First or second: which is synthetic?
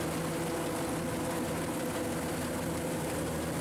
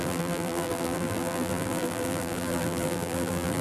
second